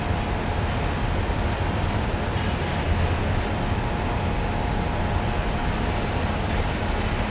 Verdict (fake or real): real